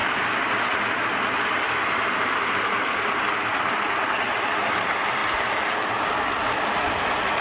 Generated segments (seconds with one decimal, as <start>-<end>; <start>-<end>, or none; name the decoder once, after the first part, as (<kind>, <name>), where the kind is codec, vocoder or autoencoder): 2.0-3.5 (vocoder, BigVGAN v2); 4.6-7.4